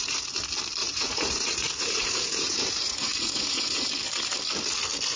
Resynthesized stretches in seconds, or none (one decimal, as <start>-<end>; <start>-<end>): 0.8-3.9